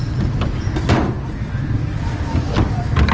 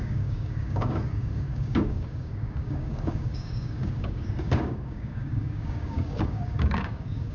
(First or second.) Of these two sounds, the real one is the first